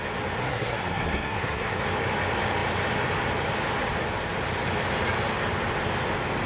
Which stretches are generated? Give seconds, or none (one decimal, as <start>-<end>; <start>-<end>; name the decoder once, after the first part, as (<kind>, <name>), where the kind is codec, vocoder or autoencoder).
0.4-1.8 (codec, SNAC)